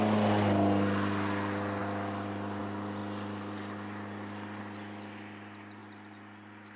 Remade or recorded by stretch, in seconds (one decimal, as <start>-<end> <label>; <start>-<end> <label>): 0.0-6.8 recorded